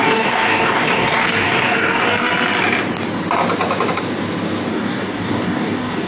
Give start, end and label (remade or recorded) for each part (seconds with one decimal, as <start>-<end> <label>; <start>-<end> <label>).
0.0-2.3 remade; 2.3-4.7 recorded; 4.7-6.1 remade